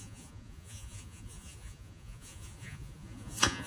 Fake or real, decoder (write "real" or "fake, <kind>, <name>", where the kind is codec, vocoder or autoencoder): fake, vocoder, Vocos